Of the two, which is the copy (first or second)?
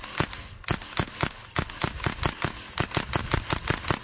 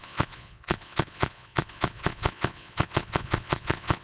second